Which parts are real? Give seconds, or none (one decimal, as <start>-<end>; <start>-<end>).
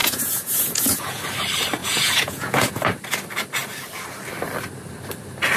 1.2-1.8; 2.7-5.6